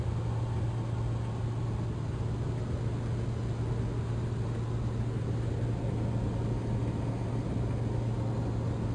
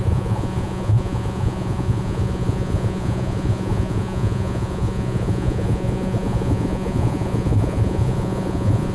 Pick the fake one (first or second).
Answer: second